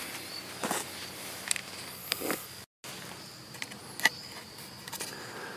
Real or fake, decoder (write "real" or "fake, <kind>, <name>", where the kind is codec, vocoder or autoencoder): real